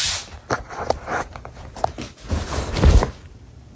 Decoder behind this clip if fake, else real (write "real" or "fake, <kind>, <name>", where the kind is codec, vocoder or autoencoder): real